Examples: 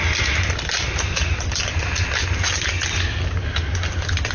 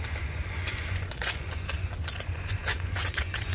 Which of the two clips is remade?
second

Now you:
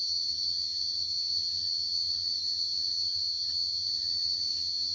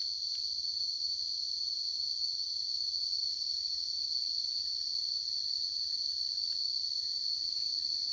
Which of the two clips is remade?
first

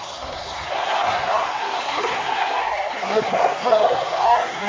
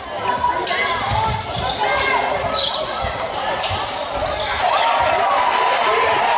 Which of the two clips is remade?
first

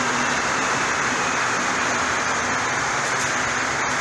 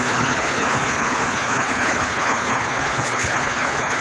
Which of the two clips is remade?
second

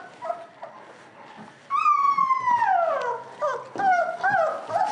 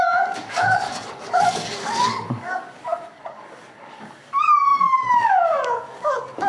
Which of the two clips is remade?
second